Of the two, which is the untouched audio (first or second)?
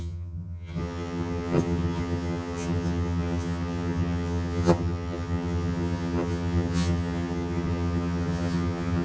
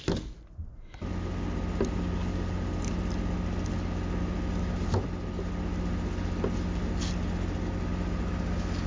second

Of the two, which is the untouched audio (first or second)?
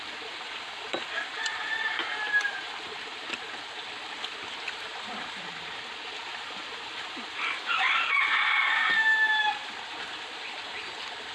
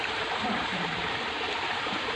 first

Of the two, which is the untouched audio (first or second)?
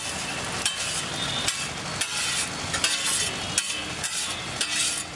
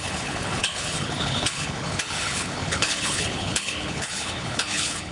first